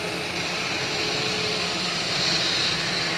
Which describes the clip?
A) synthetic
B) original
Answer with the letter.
A